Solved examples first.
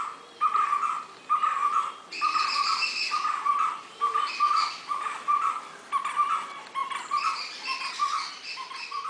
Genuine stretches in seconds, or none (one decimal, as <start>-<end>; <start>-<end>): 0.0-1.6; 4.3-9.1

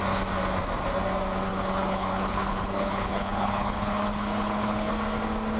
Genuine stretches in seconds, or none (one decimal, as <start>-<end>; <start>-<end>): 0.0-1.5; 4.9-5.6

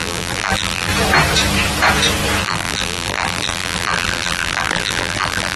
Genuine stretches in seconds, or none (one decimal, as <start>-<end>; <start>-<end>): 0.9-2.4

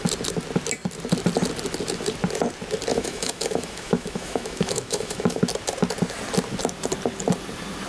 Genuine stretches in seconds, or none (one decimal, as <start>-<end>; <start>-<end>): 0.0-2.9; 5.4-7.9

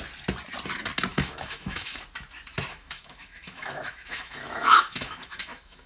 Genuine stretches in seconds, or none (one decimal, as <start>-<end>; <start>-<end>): 0.0-1.1; 2.0-2.7

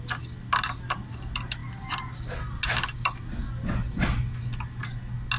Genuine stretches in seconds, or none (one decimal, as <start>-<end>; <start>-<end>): 0.0-5.4

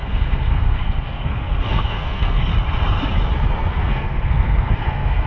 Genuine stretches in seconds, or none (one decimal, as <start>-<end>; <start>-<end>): 2.5-3.7

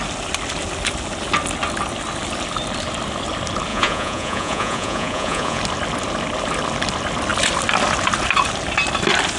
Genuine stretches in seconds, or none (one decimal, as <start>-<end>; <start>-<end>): 0.0-3.7; 5.6-9.4